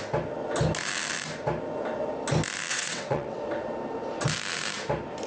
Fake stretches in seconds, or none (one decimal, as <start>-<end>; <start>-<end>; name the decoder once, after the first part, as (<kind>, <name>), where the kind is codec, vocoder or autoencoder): 2.7-3.4 (vocoder, WaveNeXt)